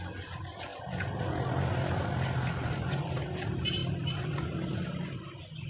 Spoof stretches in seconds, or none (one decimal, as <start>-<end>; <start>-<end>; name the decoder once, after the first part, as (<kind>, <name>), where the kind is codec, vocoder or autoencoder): none

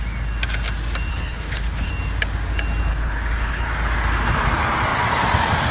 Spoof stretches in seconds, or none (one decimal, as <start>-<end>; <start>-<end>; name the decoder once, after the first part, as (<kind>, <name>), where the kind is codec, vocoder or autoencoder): 1.1-1.9 (codec, HILCodec); 2.9-3.7

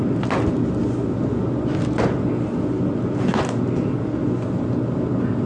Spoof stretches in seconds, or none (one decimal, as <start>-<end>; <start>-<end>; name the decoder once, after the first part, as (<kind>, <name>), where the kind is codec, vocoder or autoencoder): none

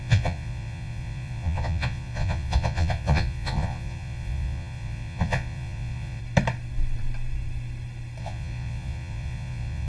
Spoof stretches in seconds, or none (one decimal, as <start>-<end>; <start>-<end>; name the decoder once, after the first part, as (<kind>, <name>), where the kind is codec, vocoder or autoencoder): 0.0-6.2 (vocoder, Vocos); 8.2-9.9

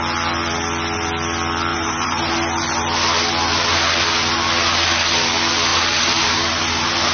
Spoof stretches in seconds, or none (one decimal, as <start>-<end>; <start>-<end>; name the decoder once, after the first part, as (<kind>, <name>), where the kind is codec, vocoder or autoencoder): 1.7-2.3 (vocoder, BigVGAN v2); 5.7-6.6

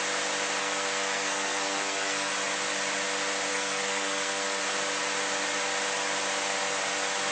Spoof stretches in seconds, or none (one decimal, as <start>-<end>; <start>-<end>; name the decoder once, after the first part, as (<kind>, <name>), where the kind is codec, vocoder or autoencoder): 0.6-2.3 (codec, SNAC); 3.5-4.6